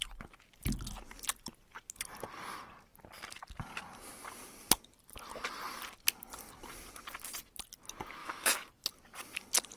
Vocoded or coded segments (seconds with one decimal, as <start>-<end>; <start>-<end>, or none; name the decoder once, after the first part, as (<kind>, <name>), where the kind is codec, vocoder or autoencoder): 8.2-8.7 (autoencoder, DAC-VAE)

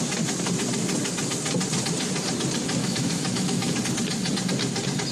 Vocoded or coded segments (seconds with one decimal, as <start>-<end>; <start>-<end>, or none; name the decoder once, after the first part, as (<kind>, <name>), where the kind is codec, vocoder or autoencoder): 2.8-3.8 (autoencoder, DAC-VAE)

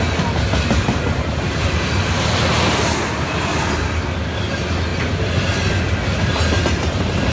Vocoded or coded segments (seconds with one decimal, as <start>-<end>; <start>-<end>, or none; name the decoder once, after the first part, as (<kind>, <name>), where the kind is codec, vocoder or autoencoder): none

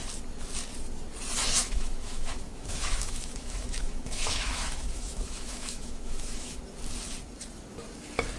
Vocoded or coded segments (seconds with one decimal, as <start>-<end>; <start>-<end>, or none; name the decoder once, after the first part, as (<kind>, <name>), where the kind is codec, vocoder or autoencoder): 1.6-6.6 (autoencoder, DAC-VAE)

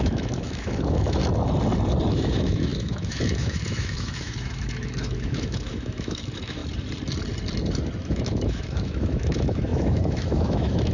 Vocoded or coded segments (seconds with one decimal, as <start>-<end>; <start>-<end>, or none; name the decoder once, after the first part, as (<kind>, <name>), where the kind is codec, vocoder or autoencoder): 0.0-1.2 (autoencoder, DAC-VAE); 2.1-6.6; 8.0-10.9

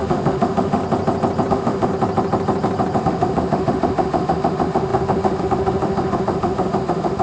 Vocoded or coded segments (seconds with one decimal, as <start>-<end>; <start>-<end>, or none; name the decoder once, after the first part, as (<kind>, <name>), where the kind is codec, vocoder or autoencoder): 0.0-0.8 (autoencoder, DAC-VAE); 1.5-1.9; 3.0-7.2